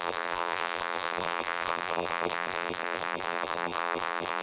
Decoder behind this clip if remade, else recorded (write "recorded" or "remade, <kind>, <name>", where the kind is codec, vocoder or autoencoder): remade, vocoder, BigVGAN v2